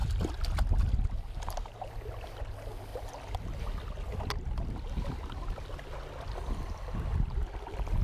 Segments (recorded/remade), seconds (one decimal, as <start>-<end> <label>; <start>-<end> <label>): 0.0-8.0 recorded